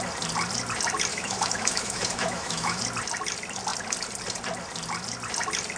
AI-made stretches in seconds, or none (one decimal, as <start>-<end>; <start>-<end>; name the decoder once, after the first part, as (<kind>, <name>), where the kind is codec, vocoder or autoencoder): 1.1-2.8 (autoencoder, DAC-VAE)